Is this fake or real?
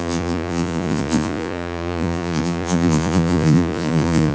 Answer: fake